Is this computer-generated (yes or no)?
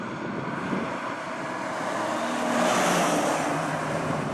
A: no